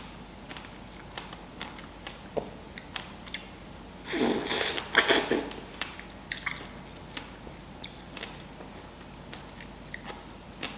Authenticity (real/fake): real